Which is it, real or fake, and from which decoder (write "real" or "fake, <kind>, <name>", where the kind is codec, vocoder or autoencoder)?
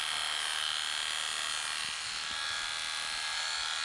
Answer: real